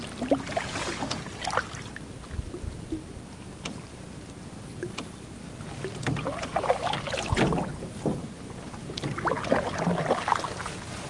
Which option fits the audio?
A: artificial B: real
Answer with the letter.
B